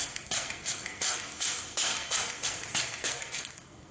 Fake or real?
fake